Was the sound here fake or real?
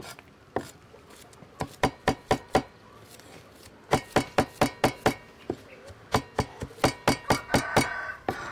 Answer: real